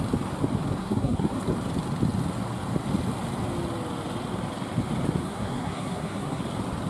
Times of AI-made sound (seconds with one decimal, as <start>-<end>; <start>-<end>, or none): 0.8-1.4; 5.2-6.4